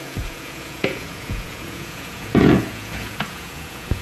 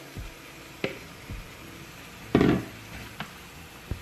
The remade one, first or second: first